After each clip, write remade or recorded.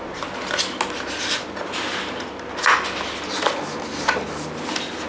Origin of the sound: recorded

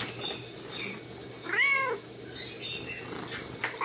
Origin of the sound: recorded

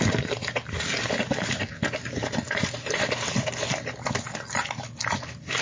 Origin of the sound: recorded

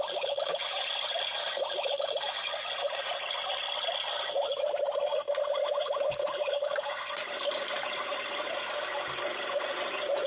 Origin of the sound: recorded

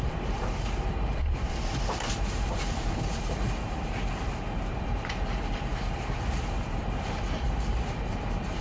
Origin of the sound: remade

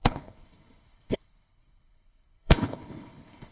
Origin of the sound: remade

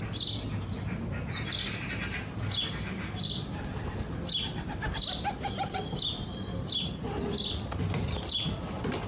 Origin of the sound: recorded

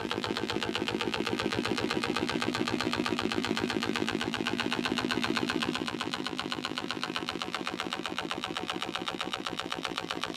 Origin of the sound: remade